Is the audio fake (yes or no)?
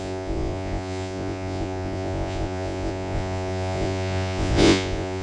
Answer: yes